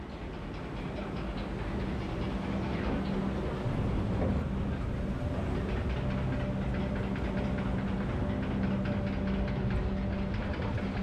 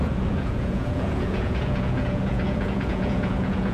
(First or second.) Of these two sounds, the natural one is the first